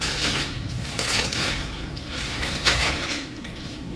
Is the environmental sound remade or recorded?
remade